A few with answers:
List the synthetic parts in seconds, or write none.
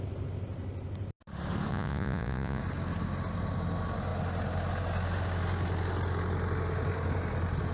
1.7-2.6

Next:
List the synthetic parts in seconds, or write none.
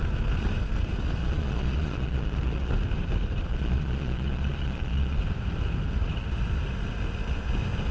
1.2-2.7; 3.5-5.2